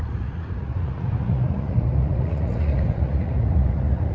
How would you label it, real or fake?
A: fake